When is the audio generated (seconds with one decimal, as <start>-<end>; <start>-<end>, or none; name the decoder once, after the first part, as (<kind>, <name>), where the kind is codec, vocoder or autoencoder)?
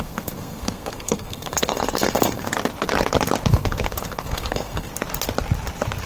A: 0.0-2.5 (codec, SNAC); 3.5-4.9